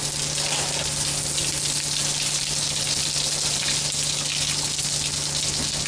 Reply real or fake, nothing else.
real